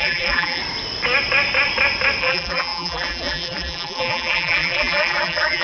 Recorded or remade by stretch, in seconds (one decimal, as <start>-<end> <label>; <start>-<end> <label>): 0.0-0.6 remade; 0.6-2.2 recorded; 2.2-5.6 remade

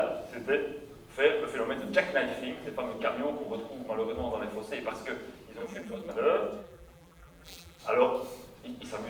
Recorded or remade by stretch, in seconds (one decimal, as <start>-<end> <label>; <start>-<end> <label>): 0.0-5.6 recorded; 5.6-6.1 remade; 6.1-6.6 recorded; 6.6-7.8 remade; 7.8-9.1 recorded

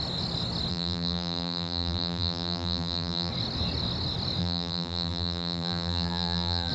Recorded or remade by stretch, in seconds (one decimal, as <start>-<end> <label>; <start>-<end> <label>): 0.0-0.7 recorded; 0.7-3.3 remade; 3.3-4.4 recorded; 4.4-6.7 remade

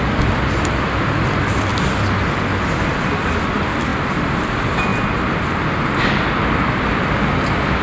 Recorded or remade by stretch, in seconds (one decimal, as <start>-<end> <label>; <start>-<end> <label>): 0.0-7.8 recorded

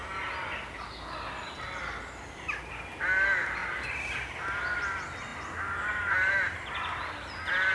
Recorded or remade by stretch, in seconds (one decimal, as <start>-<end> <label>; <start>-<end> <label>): 0.0-7.7 recorded

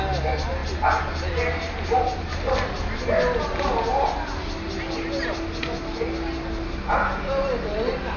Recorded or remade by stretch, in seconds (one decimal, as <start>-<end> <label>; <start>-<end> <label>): 0.0-8.2 recorded

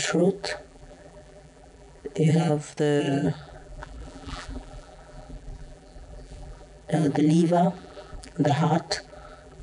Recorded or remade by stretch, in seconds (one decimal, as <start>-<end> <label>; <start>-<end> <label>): 0.0-2.5 remade; 2.5-3.0 recorded; 3.0-9.6 remade